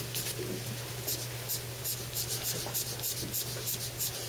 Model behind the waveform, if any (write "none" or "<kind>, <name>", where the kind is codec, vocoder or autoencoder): none